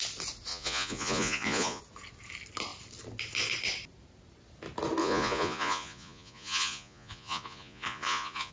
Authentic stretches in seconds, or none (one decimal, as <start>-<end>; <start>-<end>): 0.0-0.5; 1.8-5.0